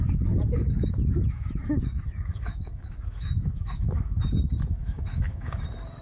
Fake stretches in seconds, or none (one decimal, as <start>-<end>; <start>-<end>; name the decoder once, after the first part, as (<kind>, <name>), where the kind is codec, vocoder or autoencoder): 0.6-4.2 (autoencoder, DAC-VAE); 4.8-5.6